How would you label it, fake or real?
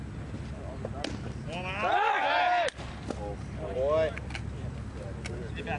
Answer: real